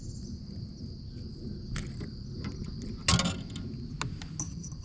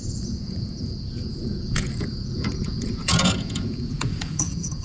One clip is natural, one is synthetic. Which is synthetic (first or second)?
second